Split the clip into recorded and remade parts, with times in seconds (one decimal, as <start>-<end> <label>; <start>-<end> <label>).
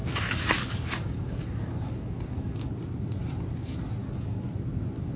0.0-2.8 remade; 2.8-4.0 recorded; 4.0-4.5 remade; 4.5-5.2 recorded